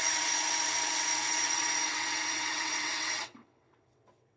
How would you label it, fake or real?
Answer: fake